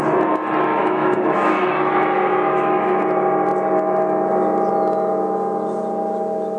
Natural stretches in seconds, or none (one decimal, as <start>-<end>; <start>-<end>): 0.0-0.8; 3.0-6.6